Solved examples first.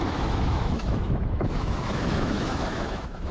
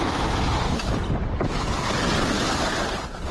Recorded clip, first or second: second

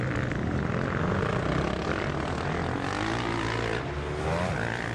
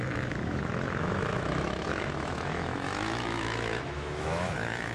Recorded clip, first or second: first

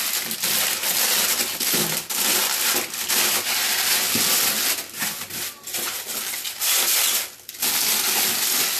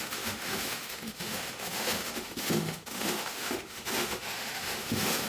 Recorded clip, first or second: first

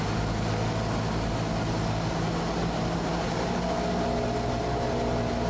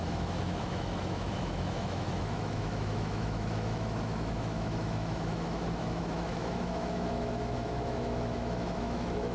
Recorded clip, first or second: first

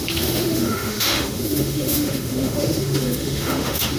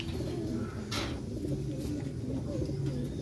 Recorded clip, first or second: second